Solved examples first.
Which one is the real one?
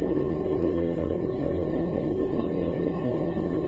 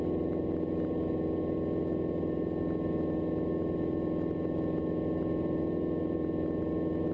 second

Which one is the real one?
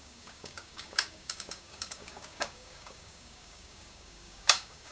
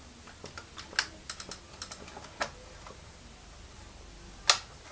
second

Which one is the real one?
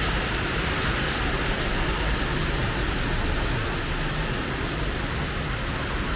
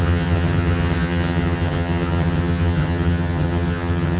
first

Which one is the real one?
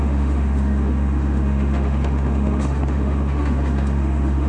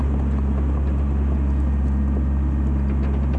second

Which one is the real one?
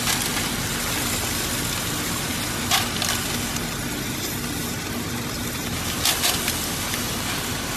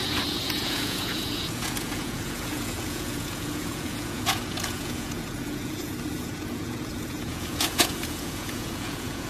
first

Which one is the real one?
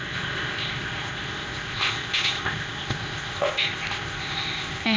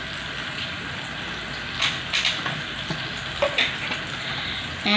second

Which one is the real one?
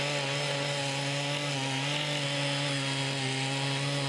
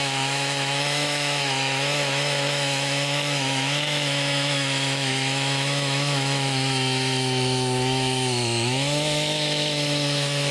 first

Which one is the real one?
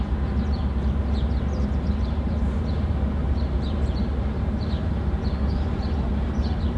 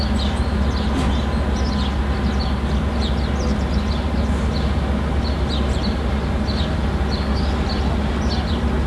second